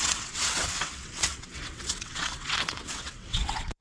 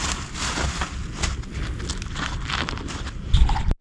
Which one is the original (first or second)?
second